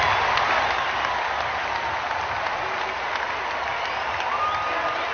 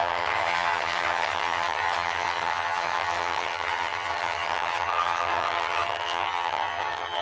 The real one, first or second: first